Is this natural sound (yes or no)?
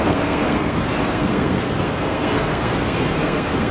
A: no